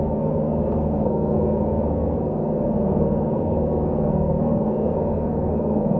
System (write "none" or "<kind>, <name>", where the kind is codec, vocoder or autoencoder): codec, SNAC